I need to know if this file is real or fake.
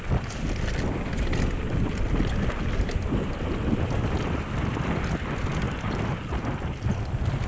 real